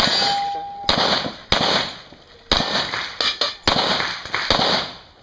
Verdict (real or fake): real